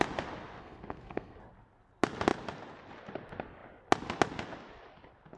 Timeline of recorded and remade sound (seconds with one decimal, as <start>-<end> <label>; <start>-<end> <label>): 0.0-0.6 recorded; 0.6-1.4 remade; 1.4-5.4 recorded